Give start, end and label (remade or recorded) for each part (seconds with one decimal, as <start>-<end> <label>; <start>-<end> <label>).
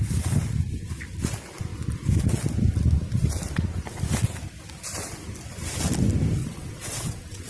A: 0.0-6.4 recorded; 6.4-7.5 remade